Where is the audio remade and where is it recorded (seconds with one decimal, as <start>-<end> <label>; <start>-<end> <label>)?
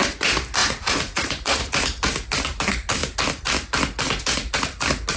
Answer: 0.0-0.6 recorded; 0.6-1.6 remade; 1.6-5.2 recorded